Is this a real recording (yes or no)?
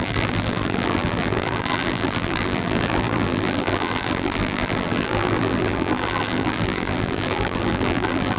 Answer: no